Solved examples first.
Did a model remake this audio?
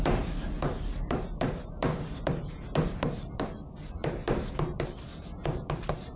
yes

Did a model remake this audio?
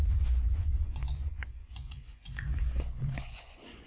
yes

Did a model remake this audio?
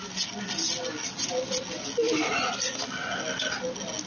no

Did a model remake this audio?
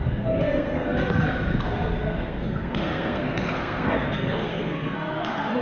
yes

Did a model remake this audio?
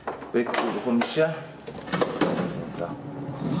no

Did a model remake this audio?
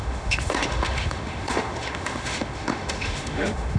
yes